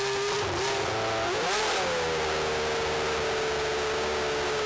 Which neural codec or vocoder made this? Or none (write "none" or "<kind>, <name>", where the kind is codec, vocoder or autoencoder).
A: none